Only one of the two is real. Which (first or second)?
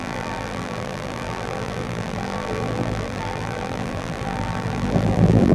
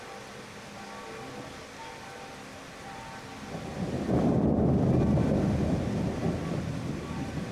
second